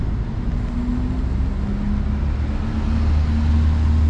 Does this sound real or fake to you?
real